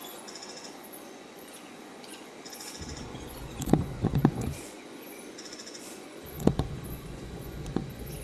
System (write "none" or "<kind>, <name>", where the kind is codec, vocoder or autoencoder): vocoder, Vocos